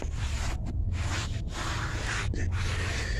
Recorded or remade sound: recorded